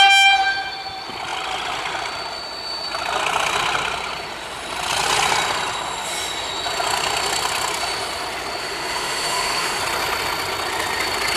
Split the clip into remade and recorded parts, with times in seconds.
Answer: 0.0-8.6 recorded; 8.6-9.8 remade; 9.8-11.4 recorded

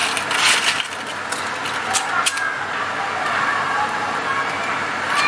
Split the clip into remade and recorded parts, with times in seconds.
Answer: 0.0-3.2 recorded; 3.2-4.3 remade; 4.3-5.3 recorded